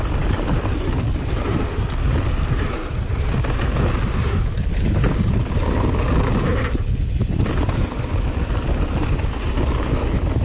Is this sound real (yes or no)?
yes